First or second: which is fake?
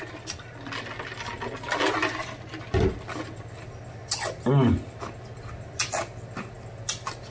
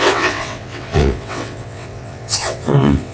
second